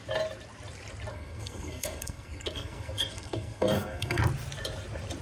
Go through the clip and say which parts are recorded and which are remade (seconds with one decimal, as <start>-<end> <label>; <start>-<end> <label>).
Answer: 0.0-1.1 recorded; 1.1-4.2 remade; 4.2-5.2 recorded